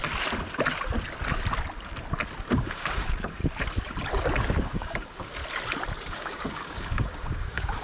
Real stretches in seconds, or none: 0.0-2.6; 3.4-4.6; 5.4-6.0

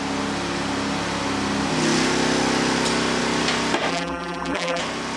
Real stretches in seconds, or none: 0.0-3.9; 4.8-5.2

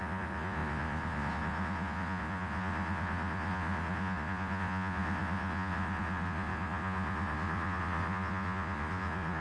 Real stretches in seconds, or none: none

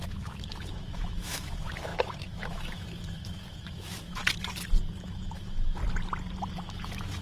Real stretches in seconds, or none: 4.2-5.0; 5.8-6.5

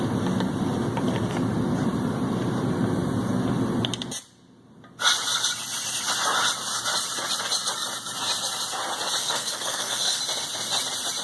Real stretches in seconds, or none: 0.0-9.2; 10.2-11.2

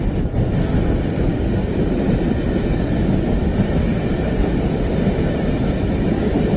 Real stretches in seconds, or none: none

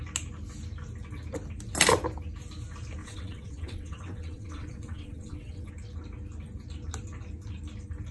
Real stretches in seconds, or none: 0.0-3.0; 5.7-8.1

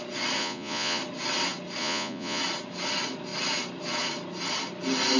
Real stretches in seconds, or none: 0.0-0.4; 1.0-1.8; 2.4-5.2